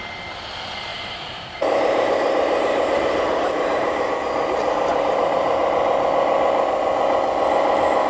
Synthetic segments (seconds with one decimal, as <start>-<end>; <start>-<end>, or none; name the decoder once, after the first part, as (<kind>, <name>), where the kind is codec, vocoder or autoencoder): 0.9-4.1 (vocoder, BigVGAN v2); 4.9-5.6